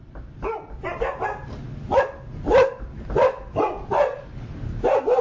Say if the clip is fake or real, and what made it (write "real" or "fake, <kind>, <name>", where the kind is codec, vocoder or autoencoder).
real